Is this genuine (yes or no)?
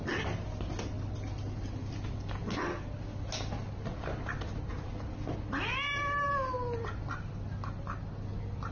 yes